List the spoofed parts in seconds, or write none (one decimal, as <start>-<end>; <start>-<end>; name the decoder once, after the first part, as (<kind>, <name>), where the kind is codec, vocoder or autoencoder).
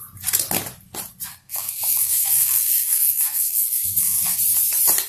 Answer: 1.3-4.4 (codec, SNAC)